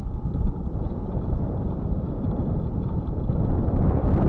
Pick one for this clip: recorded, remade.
remade